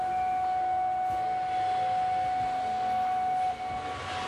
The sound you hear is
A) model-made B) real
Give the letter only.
B